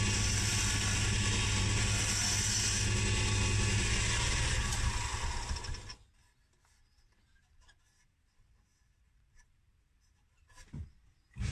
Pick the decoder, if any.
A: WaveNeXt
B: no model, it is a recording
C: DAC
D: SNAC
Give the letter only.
B